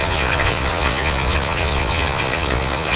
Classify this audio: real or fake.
fake